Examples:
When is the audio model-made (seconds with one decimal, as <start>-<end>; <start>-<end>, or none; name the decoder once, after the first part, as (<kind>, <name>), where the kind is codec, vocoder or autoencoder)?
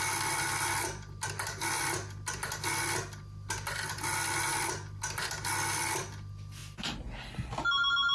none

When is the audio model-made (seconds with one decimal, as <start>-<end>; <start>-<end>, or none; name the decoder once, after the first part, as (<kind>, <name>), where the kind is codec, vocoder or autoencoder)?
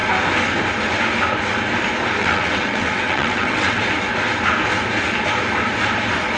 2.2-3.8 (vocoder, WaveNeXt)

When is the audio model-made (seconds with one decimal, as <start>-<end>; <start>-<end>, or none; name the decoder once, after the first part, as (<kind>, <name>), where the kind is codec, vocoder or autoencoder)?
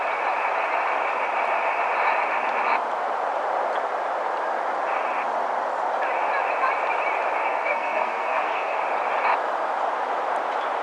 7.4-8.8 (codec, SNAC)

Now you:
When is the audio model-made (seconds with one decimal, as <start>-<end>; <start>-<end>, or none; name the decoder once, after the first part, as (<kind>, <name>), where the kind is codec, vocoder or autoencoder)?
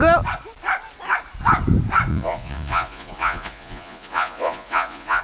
2.1-5.2 (vocoder, Vocos)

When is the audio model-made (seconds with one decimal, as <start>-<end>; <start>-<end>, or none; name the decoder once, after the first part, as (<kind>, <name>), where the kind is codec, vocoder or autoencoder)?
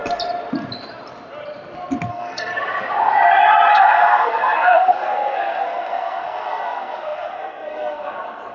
2.1-2.5 (codec, SNAC); 3.7-8.5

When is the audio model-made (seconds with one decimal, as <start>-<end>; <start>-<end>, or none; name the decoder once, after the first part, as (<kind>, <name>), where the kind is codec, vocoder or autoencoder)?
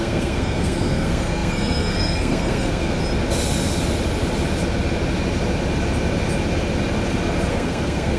0.0-3.0 (codec, SNAC); 7.5-8.2